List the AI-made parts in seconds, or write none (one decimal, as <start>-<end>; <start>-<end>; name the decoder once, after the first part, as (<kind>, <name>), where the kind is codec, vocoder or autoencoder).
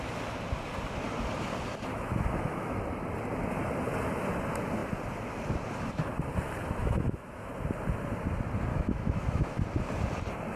1.9-2.8 (autoencoder, DAC-VAE); 6.8-7.5; 8.7-9.6